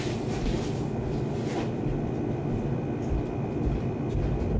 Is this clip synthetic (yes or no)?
no